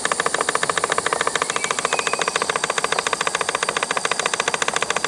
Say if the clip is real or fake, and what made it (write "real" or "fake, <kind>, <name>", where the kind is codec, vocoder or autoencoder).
real